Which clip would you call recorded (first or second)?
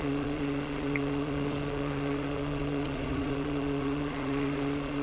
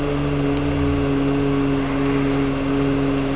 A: second